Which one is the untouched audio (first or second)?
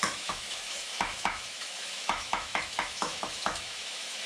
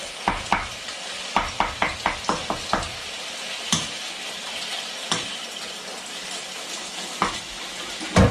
second